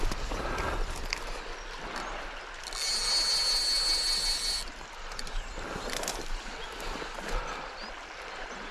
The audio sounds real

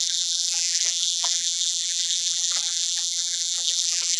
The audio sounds fake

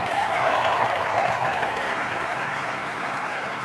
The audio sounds fake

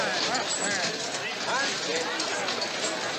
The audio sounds real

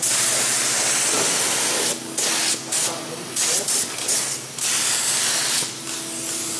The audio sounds real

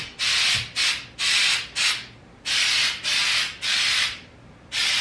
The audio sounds real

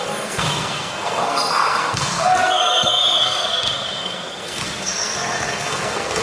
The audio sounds fake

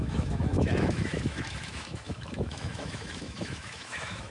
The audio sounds fake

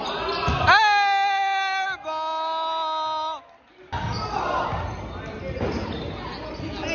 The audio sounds real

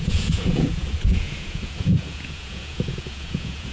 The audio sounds fake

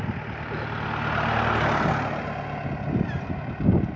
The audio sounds real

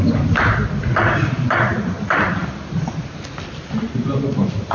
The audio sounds real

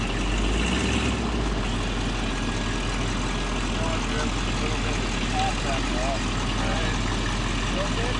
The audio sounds real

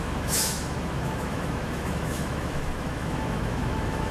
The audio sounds fake